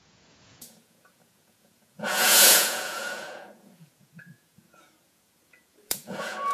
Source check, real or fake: fake